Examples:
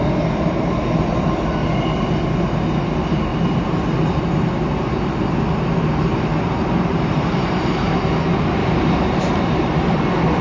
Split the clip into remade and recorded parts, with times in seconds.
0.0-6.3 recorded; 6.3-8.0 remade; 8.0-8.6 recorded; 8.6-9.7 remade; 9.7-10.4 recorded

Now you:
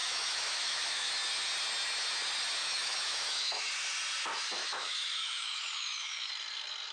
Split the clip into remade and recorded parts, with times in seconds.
0.0-1.1 remade; 1.1-2.6 recorded; 2.6-3.7 remade; 3.7-4.6 recorded; 4.6-6.3 remade; 6.3-6.9 recorded